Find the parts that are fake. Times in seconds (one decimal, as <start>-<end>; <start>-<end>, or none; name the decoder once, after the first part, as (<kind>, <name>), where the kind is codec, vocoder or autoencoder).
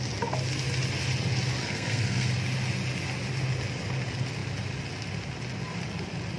1.6-2.3 (codec, SNAC)